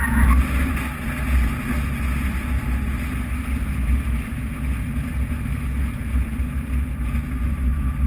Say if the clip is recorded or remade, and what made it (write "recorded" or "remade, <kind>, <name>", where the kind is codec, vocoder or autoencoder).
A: recorded